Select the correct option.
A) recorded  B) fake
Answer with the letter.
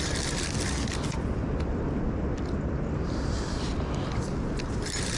A